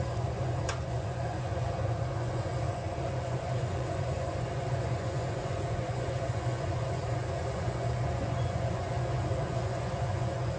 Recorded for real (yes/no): no